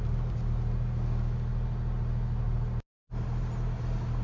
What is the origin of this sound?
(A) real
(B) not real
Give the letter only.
A